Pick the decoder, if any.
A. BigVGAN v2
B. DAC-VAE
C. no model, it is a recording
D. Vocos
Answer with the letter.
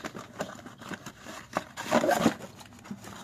C